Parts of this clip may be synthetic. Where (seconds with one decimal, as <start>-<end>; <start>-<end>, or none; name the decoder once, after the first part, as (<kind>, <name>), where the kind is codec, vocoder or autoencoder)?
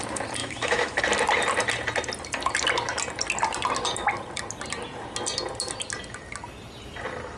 0.4-1.0 (autoencoder, DAC-VAE)